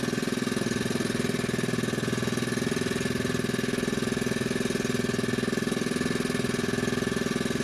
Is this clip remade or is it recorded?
recorded